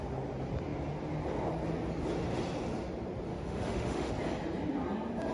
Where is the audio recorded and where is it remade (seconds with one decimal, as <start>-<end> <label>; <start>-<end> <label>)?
0.0-3.3 recorded; 3.3-4.1 remade; 4.1-5.3 recorded